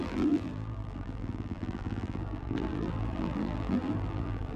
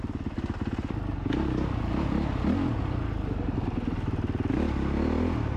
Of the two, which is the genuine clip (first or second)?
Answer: second